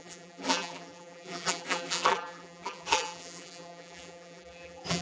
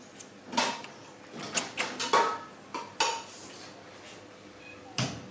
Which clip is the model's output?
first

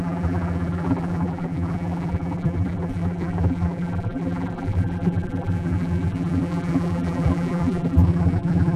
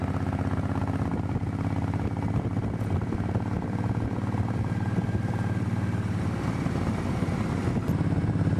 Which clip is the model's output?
first